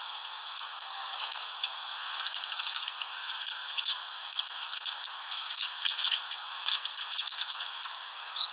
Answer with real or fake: fake